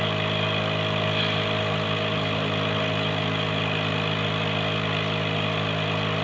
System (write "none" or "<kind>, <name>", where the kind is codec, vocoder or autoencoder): none